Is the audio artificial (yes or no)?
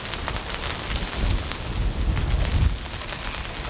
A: no